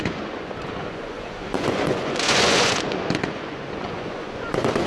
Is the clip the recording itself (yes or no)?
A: no